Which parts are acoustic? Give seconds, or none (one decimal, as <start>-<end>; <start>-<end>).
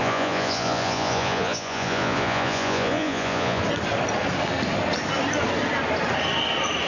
3.6-6.9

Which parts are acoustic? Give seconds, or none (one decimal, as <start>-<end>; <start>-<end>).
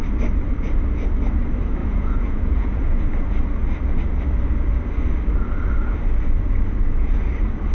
0.0-1.8; 3.0-7.7